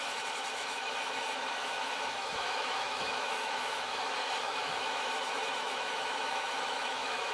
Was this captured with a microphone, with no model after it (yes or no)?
no